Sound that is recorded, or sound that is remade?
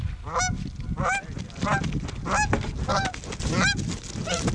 recorded